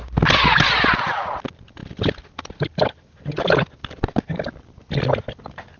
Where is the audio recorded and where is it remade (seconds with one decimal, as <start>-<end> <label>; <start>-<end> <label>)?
0.0-5.8 recorded